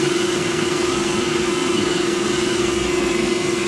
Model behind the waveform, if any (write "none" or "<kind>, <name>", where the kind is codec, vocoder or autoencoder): codec, SNAC